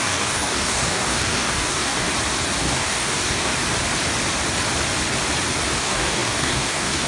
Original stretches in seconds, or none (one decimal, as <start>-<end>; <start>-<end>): 2.1-2.6; 3.5-5.8